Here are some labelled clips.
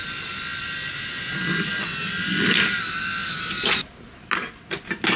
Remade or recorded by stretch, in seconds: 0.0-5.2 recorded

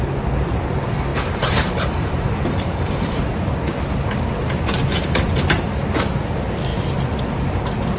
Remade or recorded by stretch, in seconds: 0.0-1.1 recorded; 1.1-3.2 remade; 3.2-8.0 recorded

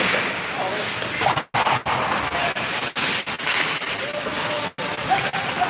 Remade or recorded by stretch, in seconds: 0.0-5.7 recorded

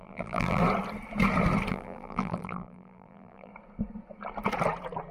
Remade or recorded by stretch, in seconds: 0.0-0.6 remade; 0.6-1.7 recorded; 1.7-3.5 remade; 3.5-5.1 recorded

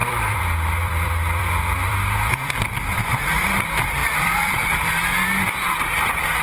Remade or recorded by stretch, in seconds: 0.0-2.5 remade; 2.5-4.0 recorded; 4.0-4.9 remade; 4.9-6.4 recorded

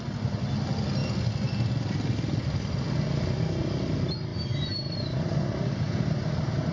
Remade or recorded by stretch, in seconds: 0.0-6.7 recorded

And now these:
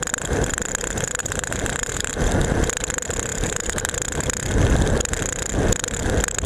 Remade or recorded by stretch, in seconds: 0.0-1.2 recorded; 1.2-2.1 remade; 2.1-3.3 recorded; 3.3-3.8 remade; 3.8-6.5 recorded

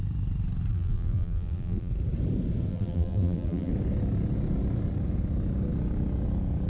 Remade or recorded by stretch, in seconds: 0.0-0.7 recorded; 0.7-1.9 remade; 1.9-2.7 recorded; 2.7-3.7 remade; 3.7-6.7 recorded